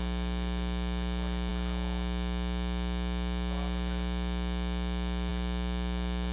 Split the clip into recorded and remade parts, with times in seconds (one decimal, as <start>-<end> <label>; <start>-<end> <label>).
0.0-6.3 recorded